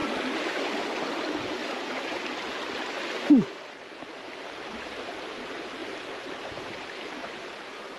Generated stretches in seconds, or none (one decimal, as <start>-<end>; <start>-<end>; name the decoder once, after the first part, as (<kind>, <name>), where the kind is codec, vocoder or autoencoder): 0.8-1.6 (vocoder, BigVGAN v2); 4.7-8.0